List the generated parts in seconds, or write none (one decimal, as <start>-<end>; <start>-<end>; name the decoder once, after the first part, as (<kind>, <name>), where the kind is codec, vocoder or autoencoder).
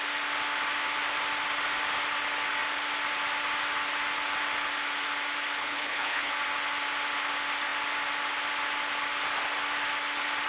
5.6-6.3 (codec, HILCodec)